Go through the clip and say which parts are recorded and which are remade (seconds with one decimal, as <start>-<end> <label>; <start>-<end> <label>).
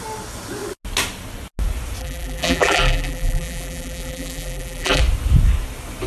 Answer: 0.0-2.0 recorded; 2.0-5.0 remade; 5.0-6.1 recorded